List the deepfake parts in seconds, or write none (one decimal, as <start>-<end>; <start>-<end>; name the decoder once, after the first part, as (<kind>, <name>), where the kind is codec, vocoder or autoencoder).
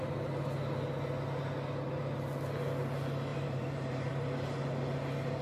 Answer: 3.3-4.1 (vocoder, BigVGAN v2)